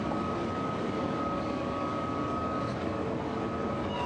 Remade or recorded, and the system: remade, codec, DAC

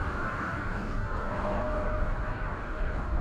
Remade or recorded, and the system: remade, codec, DAC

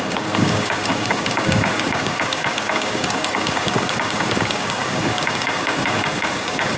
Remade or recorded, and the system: remade, codec, DAC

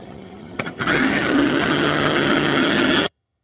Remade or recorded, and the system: remade, vocoder, HiFi-GAN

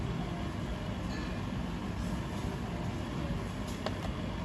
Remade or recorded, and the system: recorded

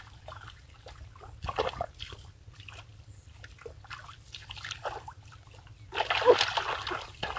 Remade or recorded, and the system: recorded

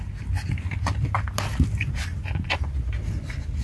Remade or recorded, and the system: recorded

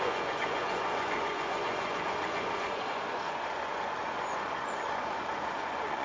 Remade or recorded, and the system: remade, vocoder, Vocos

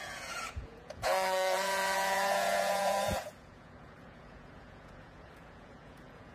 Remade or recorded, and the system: remade, vocoder, Vocos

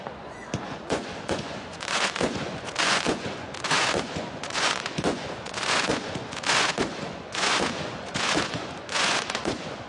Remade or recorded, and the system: remade, vocoder, Vocos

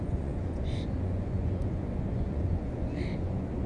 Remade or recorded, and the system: remade, vocoder, Vocos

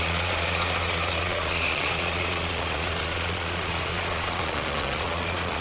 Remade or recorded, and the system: remade, vocoder, Vocos